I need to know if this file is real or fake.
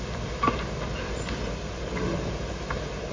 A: real